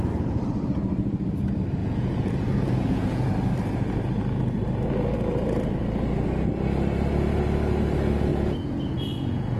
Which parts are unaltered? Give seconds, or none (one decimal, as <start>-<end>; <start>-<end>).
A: 0.0-1.8; 3.3-8.3